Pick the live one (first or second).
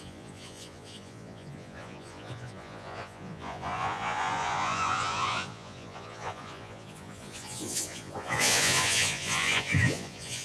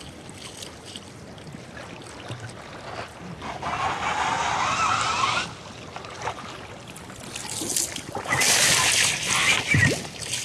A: second